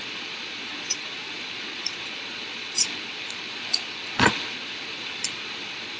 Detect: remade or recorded remade